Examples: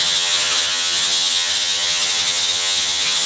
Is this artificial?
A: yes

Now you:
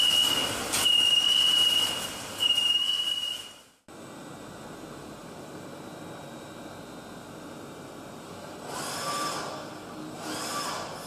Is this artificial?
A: no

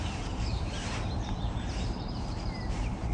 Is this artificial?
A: yes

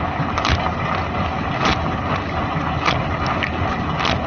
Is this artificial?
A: no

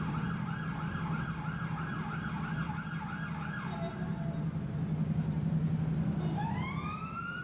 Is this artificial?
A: no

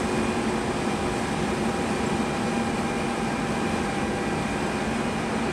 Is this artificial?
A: no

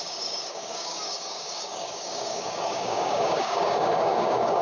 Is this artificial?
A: yes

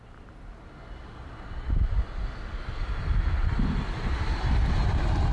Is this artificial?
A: no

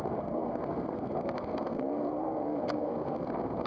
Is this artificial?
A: yes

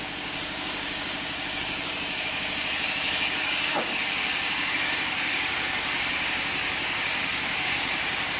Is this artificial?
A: yes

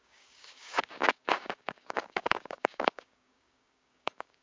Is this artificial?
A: yes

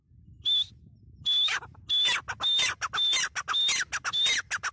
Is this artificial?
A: no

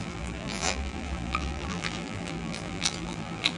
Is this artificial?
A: yes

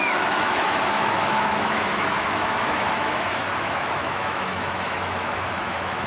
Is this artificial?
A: yes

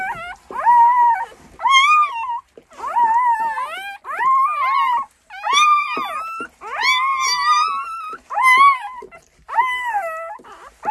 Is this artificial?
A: no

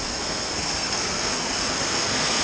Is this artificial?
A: yes